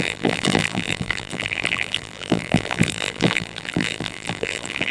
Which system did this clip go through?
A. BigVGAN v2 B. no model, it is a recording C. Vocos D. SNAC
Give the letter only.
A